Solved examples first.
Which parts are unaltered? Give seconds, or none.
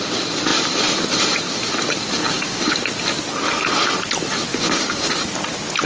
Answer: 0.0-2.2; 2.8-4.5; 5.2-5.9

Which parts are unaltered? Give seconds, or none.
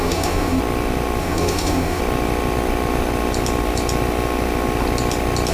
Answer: 0.6-1.2; 2.0-5.5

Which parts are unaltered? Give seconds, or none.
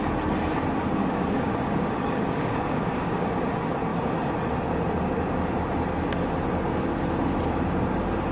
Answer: 0.0-1.0; 3.5-8.3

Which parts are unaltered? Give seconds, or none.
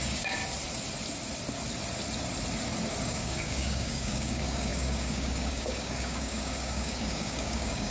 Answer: 0.4-3.0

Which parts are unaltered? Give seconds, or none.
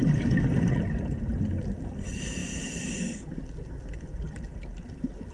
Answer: 0.0-5.3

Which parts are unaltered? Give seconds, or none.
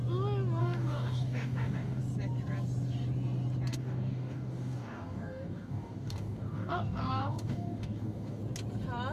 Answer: 0.0-0.6; 2.0-3.7; 8.4-9.1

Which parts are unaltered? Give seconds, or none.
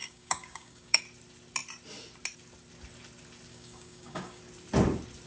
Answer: 1.0-3.5; 4.4-5.3